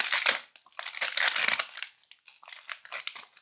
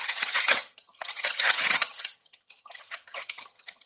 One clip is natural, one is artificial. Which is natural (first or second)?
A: first